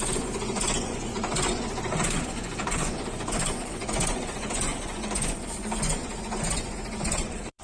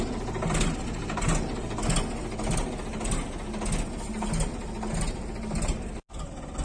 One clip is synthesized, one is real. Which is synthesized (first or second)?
first